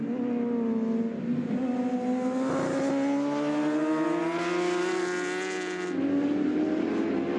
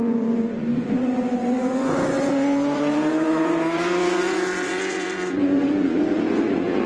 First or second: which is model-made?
second